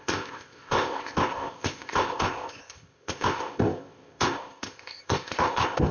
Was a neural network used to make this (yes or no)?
yes